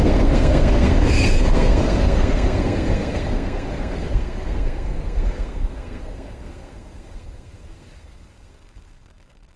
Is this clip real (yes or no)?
no